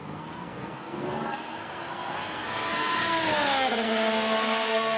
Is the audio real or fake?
fake